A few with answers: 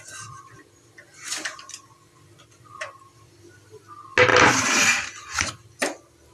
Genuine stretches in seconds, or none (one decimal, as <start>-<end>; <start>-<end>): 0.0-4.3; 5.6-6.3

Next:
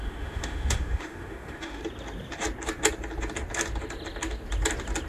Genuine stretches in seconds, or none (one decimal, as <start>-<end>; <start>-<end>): 1.8-5.1

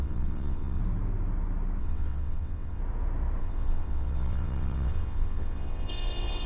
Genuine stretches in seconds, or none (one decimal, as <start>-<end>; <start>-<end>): 0.8-1.8; 2.8-3.4